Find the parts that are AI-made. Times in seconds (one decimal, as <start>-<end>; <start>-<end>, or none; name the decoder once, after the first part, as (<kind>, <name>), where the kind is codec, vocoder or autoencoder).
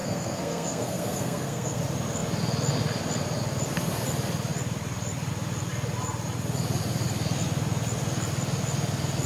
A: 0.0-1.8 (codec, SNAC)